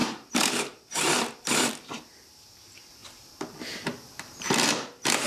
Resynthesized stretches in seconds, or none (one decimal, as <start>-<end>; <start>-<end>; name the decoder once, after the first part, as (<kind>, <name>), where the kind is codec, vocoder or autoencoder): 0.0-5.3 (vocoder, BigVGAN v2)

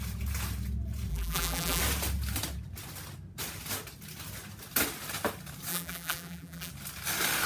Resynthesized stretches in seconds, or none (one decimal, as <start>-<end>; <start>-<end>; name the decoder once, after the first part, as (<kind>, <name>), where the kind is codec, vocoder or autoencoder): 1.1-1.8 (vocoder, BigVGAN v2); 5.7-6.7

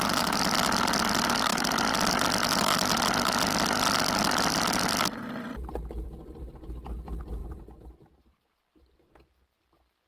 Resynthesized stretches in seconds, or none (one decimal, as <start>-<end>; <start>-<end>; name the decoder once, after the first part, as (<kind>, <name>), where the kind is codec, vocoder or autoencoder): 7.4-9.3 (vocoder, BigVGAN v2)

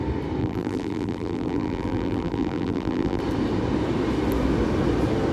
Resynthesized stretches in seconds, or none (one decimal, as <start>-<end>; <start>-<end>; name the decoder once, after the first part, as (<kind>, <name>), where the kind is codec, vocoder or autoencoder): 0.4-3.2 (vocoder, BigVGAN v2)